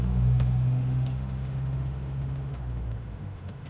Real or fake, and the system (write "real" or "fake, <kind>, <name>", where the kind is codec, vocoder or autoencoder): fake, autoencoder, DAC-VAE